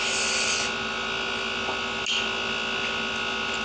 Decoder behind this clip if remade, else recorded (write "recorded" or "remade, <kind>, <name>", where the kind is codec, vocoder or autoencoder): recorded